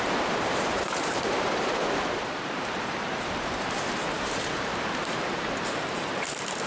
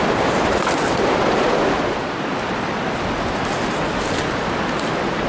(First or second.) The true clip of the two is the second